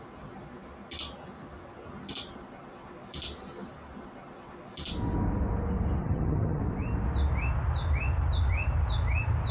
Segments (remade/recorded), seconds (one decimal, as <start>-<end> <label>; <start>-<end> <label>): 0.0-6.0 recorded; 6.0-6.6 remade; 6.6-9.5 recorded